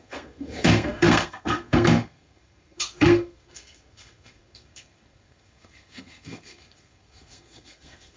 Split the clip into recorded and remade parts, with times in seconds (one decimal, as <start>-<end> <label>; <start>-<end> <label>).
0.0-8.2 remade